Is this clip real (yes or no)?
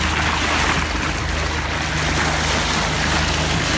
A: yes